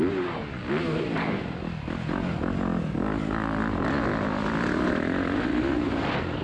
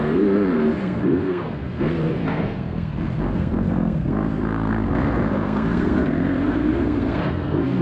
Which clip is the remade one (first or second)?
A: second